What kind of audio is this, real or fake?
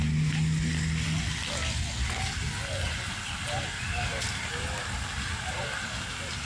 real